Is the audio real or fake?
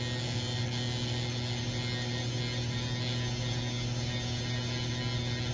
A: real